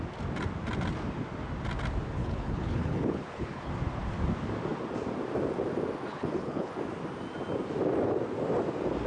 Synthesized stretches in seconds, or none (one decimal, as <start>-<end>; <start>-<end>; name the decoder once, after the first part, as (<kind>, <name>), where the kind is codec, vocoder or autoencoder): 2.2-3.7 (codec, HILCodec); 6.1-6.7